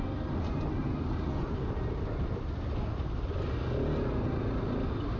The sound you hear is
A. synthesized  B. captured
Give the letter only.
B